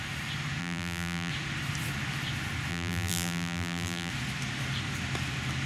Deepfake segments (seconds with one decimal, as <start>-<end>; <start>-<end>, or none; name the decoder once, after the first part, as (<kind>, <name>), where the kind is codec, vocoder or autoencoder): 0.6-1.3 (vocoder, BigVGAN v2); 2.7-4.1